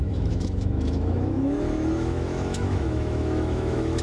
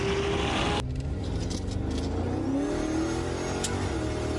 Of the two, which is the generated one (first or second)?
first